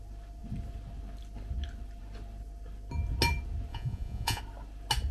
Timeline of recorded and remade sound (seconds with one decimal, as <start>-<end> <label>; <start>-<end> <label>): 0.0-3.7 recorded; 3.7-4.4 remade; 4.4-5.1 recorded